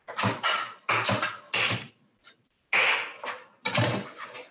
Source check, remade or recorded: recorded